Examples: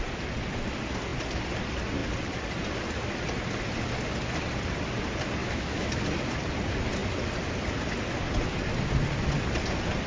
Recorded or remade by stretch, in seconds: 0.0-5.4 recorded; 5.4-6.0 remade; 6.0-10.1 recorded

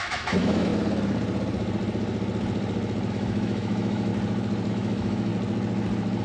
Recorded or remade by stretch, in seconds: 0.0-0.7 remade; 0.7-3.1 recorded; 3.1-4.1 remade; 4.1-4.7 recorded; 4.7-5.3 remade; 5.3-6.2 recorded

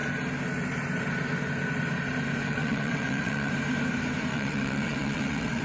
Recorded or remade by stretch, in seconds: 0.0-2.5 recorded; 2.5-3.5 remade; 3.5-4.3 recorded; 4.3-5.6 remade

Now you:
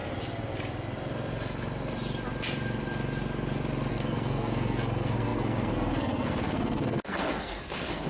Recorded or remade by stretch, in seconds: 0.0-3.9 recorded; 3.9-8.1 remade

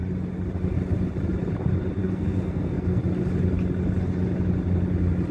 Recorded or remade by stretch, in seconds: 0.0-2.0 recorded; 2.0-3.0 remade; 3.0-5.3 recorded

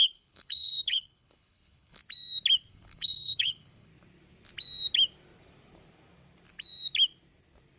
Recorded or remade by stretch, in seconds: 0.0-2.0 remade; 2.0-2.7 recorded; 2.7-3.9 remade; 3.9-7.8 recorded

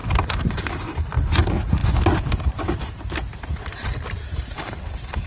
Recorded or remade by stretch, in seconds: 0.0-0.9 remade; 0.9-1.8 recorded; 1.8-5.3 remade